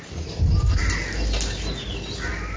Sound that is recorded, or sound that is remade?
recorded